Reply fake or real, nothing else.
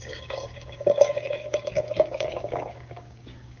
fake